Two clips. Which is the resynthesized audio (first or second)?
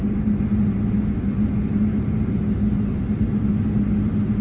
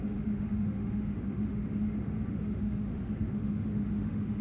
second